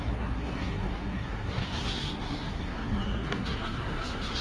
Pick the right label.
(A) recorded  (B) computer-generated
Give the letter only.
B